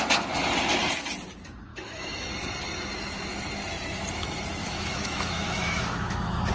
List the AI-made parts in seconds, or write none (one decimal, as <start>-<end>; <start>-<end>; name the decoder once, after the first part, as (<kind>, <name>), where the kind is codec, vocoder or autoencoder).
1.7-2.3 (autoencoder, DAC-VAE); 4.6-6.5